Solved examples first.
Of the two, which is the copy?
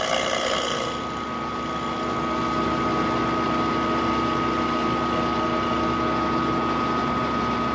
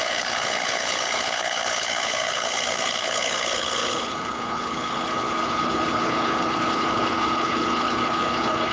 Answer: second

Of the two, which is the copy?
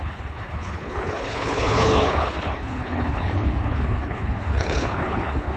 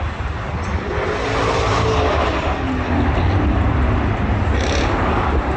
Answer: first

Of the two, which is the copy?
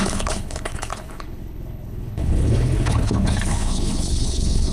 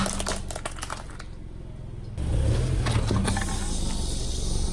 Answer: first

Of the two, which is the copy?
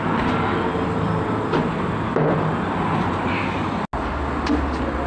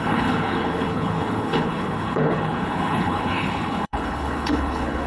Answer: second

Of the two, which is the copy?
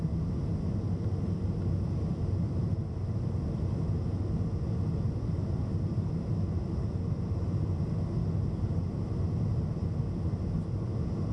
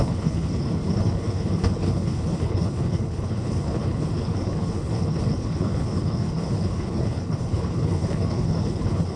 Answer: second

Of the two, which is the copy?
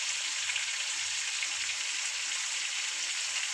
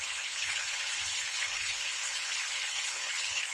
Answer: second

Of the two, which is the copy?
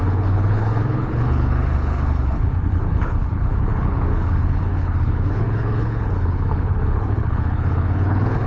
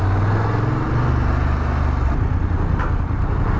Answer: first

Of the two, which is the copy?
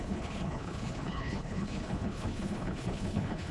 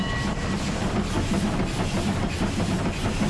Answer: first